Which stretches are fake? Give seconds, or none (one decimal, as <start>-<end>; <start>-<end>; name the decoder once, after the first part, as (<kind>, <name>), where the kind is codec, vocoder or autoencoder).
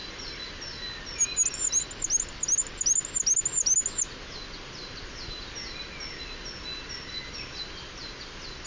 none